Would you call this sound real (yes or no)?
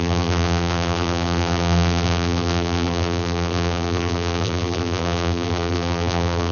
no